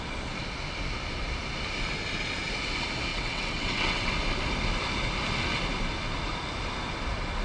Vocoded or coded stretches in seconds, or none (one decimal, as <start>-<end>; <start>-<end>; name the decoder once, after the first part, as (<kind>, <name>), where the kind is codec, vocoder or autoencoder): 3.1-4.1 (vocoder, WaveNeXt)